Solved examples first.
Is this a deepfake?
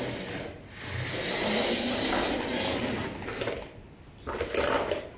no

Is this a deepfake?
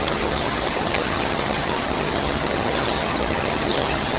yes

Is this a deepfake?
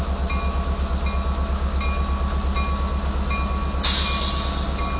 no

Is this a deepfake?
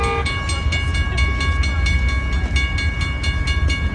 no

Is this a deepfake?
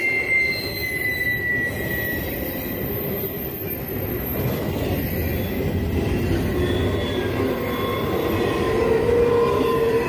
no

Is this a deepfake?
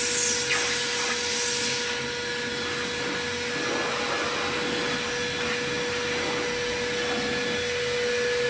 no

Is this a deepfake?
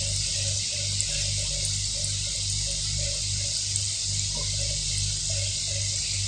no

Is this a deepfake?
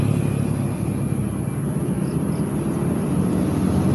no